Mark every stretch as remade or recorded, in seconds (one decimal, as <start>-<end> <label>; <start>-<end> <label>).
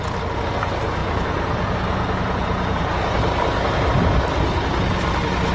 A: 0.0-1.0 recorded; 1.0-2.9 remade; 2.9-5.5 recorded